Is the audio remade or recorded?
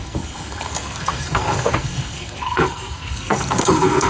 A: remade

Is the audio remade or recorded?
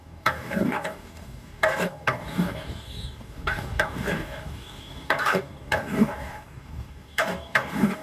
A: remade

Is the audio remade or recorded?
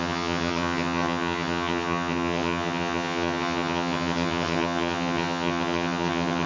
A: remade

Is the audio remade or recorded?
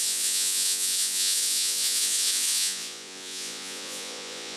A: remade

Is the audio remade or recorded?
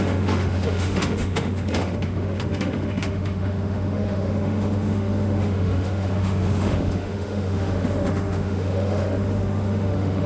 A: remade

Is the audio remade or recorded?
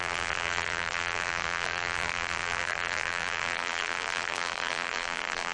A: remade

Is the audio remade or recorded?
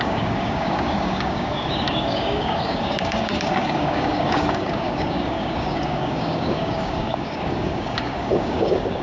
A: remade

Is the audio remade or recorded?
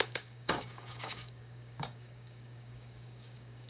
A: remade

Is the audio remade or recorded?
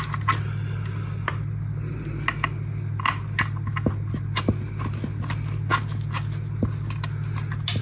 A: recorded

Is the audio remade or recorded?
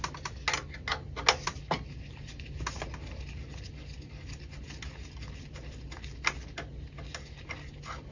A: recorded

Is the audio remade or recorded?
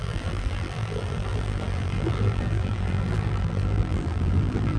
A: remade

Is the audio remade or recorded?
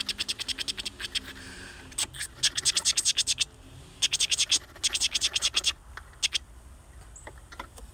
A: recorded